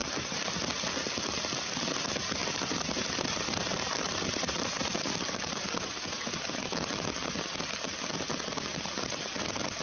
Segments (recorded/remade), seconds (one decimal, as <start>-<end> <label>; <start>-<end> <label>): 0.0-0.5 remade; 0.5-2.4 recorded; 2.4-6.6 remade; 6.6-9.8 recorded